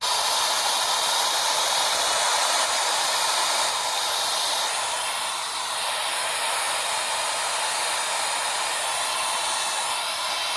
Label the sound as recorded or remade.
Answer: recorded